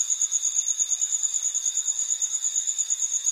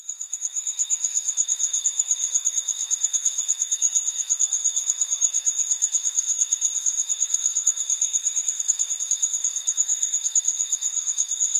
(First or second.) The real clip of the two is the first